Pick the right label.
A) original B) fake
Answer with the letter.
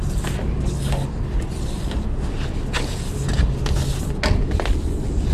A